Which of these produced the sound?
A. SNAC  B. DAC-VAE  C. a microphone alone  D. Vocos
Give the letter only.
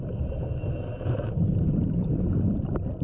C